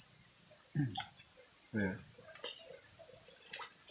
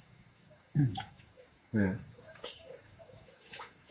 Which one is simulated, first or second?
second